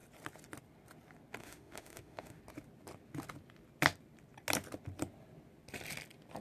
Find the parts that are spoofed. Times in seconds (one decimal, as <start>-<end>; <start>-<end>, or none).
1.4-2.4